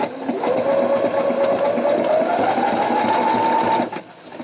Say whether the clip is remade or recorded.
recorded